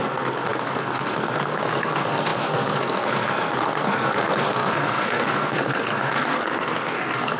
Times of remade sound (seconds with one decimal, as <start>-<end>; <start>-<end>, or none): 0.0-7.4